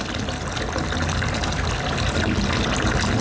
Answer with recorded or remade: recorded